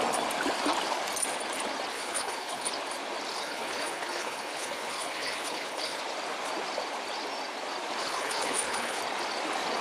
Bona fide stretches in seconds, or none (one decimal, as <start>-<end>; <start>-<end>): 0.0-1.9; 2.7-3.3; 6.0-8.0; 9.0-9.8